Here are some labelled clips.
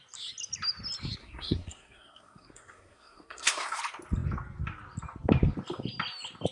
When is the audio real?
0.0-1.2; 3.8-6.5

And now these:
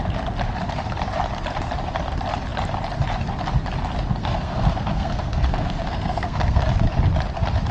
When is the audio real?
0.0-4.2; 6.6-7.7

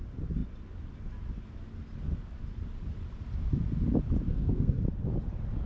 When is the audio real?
0.0-4.3; 4.8-5.7

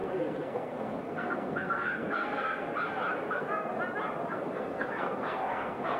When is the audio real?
2.7-3.3; 3.7-4.3

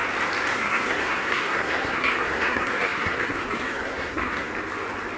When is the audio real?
0.0-0.5; 4.5-5.2

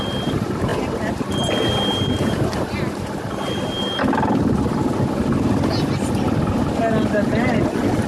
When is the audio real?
0.0-8.1